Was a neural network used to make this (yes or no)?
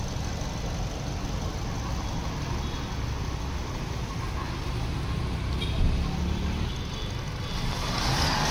no